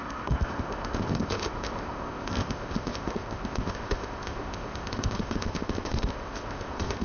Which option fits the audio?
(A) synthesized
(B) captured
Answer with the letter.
A